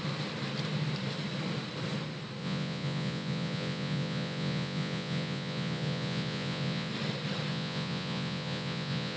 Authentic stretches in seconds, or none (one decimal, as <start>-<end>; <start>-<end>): 0.0-2.4; 6.9-7.5